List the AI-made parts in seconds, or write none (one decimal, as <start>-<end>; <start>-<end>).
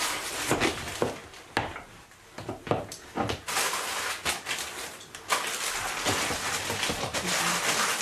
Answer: none